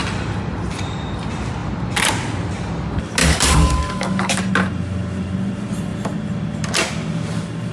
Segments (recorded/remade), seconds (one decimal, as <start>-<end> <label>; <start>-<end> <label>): 0.0-3.2 recorded; 3.2-4.4 remade; 4.4-7.7 recorded